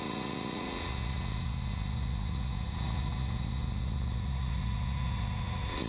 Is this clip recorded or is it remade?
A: remade